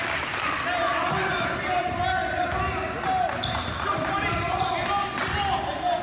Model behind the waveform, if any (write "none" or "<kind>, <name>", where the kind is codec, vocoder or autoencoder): none